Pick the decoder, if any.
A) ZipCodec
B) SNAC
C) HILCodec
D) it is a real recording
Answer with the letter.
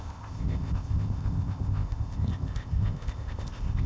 A